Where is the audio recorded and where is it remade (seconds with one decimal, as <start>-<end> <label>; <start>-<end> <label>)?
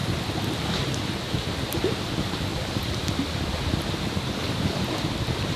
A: 0.0-5.6 recorded